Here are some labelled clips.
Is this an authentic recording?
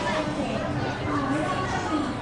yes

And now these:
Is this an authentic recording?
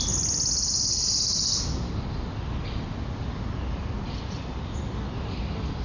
yes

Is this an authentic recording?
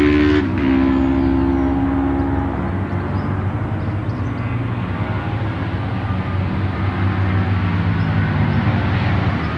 yes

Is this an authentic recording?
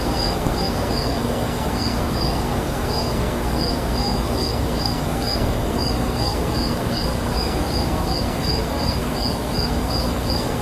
no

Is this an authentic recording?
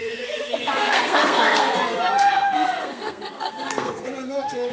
no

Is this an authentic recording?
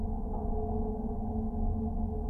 yes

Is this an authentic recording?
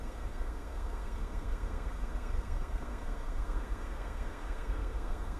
no